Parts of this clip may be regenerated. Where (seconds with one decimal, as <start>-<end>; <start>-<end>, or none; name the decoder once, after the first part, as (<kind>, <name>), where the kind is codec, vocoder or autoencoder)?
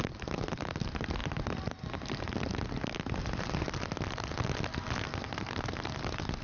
none